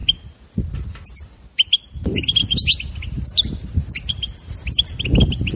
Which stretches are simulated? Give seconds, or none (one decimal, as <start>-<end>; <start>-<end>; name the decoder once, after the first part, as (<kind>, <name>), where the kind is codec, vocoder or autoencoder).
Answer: none